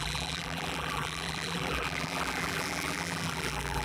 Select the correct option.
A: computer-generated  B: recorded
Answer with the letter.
A